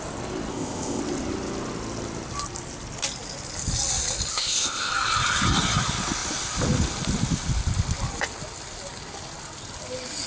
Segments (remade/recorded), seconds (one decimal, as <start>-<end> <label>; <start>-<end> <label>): 0.0-0.5 recorded; 0.5-1.0 remade; 1.0-4.3 recorded; 4.3-4.9 remade; 4.9-10.3 recorded